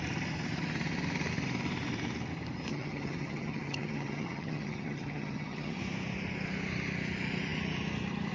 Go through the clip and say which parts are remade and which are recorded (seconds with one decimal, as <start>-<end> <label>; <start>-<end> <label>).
0.0-2.7 recorded; 2.7-5.8 remade; 5.8-8.3 recorded